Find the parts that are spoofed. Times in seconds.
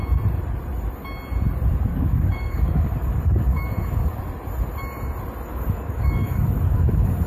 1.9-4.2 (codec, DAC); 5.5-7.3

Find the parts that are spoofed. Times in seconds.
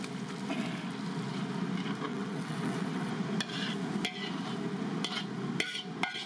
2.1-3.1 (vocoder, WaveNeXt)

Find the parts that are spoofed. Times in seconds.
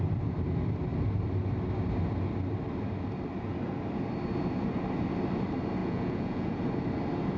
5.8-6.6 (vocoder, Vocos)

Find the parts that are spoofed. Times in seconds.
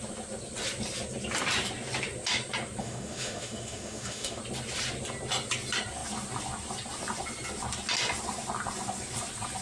2.8-4.4 (autoencoder, DAC-VAE)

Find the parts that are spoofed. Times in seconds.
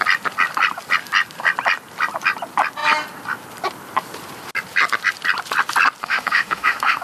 6.0-7.0 (autoencoder, DAC-VAE)